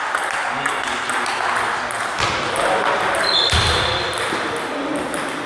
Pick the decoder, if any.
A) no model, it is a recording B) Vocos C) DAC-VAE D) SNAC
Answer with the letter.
A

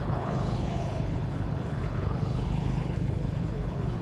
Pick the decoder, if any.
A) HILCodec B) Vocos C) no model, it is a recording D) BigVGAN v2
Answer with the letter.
A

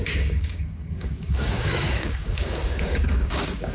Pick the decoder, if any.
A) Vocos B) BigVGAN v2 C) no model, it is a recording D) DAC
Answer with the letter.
D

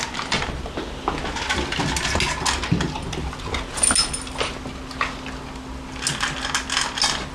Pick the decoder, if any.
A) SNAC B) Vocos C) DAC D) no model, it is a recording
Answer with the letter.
D